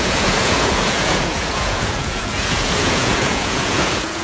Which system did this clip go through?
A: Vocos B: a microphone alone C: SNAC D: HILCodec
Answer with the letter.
A